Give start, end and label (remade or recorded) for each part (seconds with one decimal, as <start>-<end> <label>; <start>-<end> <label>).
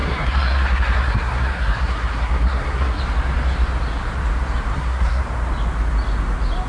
0.0-3.0 remade; 3.0-4.7 recorded; 4.7-5.2 remade; 5.2-6.7 recorded